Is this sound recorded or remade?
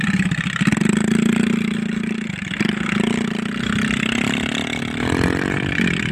recorded